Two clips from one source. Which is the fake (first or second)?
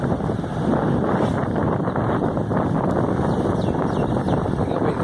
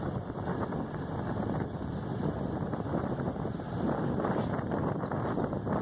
first